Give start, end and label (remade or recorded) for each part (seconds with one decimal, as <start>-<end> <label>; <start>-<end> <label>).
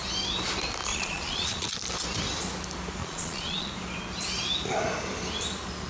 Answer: 0.0-0.9 recorded; 0.9-1.7 remade; 1.7-3.0 recorded; 3.0-3.7 remade; 3.7-5.9 recorded